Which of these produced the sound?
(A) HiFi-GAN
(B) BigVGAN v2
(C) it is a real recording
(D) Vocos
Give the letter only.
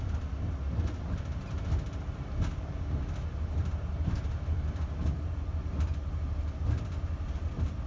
C